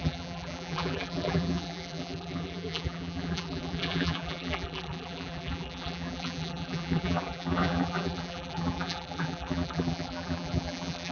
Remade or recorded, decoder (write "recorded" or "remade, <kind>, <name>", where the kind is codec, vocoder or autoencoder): remade, vocoder, BigVGAN v2